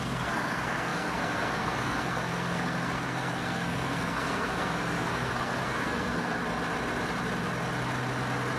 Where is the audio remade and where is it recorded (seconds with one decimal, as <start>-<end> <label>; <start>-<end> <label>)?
0.0-6.4 remade; 6.4-8.6 recorded